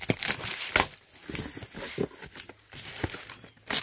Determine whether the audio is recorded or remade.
recorded